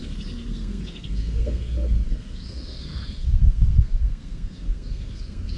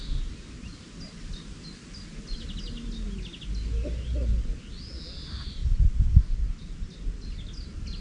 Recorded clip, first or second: second